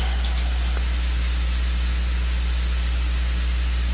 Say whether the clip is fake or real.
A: real